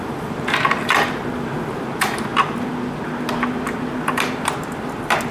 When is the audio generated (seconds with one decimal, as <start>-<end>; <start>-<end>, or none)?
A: none